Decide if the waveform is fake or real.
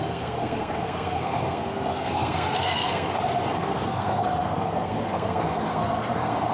fake